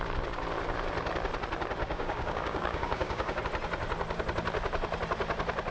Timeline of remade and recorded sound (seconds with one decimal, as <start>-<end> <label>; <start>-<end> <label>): 0.0-1.8 recorded; 1.8-3.4 remade; 3.4-5.7 recorded